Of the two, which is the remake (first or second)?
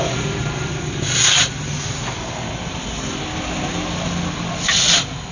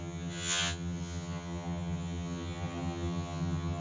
second